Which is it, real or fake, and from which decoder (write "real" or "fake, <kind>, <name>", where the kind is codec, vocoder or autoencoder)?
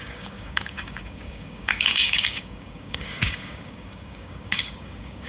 fake, codec, DAC